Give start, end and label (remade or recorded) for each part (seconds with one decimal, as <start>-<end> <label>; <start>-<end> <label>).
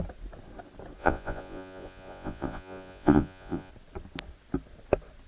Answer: 0.0-1.0 recorded; 1.0-3.7 remade; 3.7-5.3 recorded